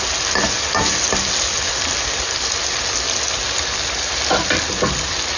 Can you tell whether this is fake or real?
real